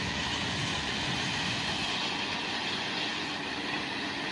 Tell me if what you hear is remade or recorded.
remade